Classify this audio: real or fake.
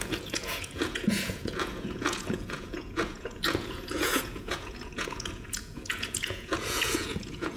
fake